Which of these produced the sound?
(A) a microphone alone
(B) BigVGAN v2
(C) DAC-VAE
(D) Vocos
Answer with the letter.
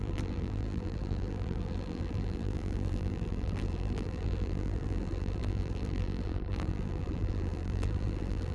B